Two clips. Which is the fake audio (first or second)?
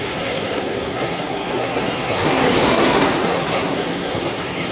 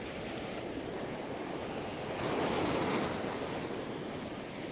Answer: first